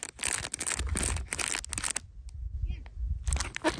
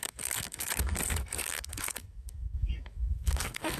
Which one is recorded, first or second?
first